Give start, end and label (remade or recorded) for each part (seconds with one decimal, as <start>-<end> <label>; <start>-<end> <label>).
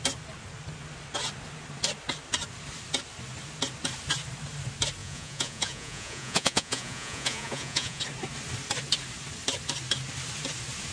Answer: 0.0-5.0 recorded; 5.0-8.0 remade; 8.0-10.9 recorded